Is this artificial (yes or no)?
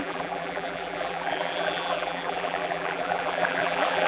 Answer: yes